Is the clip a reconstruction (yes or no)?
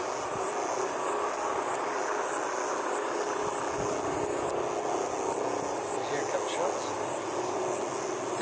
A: no